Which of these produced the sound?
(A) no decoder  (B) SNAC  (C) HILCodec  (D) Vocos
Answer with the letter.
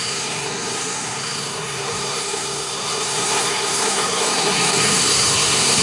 B